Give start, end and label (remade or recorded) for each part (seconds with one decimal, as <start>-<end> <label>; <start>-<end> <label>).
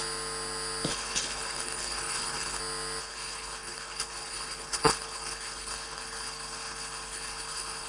0.0-0.9 recorded; 0.9-2.6 remade; 2.6-3.0 recorded; 3.0-7.9 remade